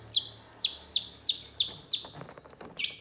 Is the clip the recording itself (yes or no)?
yes